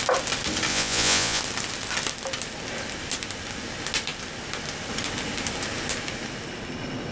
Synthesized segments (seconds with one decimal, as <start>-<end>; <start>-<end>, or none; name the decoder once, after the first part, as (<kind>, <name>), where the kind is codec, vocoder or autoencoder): 0.7-1.4 (vocoder, Vocos)

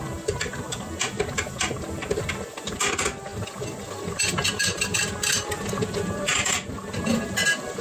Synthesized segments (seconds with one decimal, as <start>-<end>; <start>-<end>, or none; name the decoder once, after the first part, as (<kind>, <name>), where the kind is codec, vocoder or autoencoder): none